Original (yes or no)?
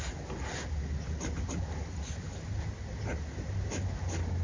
yes